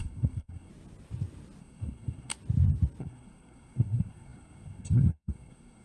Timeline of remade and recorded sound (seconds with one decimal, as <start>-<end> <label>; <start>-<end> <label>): 0.0-0.7 remade; 0.7-1.6 recorded; 1.6-2.3 remade; 2.3-3.0 recorded; 3.0-5.8 remade